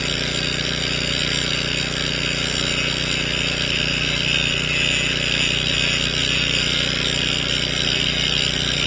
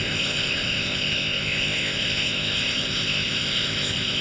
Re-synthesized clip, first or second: second